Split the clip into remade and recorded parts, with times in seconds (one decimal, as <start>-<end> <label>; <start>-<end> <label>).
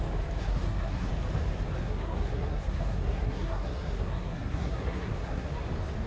0.0-0.4 recorded; 0.4-1.1 remade; 1.1-1.8 recorded; 1.8-5.5 remade; 5.5-6.1 recorded